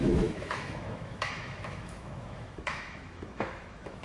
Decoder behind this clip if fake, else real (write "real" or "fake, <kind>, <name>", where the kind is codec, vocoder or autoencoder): fake, autoencoder, DAC-VAE